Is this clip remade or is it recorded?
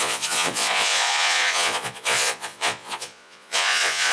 remade